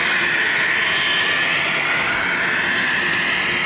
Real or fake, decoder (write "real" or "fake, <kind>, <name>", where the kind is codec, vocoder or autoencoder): real